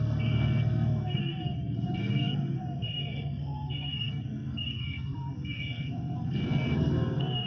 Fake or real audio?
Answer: fake